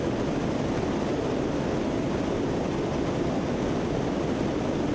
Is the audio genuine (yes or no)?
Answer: yes